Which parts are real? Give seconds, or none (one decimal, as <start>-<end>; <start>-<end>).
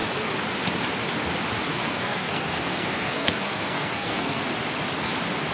0.0-1.7; 4.4-5.5